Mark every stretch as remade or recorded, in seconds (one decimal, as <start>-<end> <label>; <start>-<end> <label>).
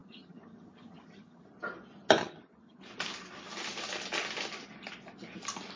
0.0-1.5 remade; 1.5-2.2 recorded; 2.2-2.8 remade; 2.8-5.8 recorded